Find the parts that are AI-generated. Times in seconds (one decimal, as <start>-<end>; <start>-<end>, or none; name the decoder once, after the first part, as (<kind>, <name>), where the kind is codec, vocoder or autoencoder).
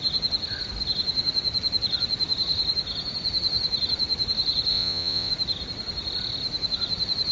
4.7-5.3 (vocoder, Vocos)